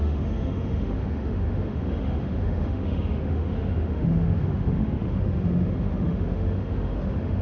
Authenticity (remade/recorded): remade